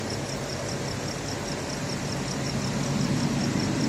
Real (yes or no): no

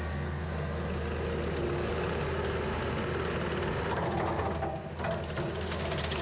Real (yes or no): yes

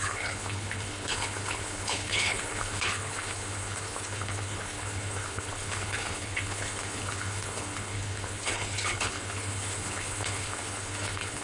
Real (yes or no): no